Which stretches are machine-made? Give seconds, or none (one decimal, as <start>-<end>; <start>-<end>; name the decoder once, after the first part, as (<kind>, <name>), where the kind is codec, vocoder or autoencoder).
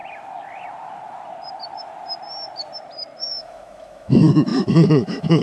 3.2-5.4 (autoencoder, DAC-VAE)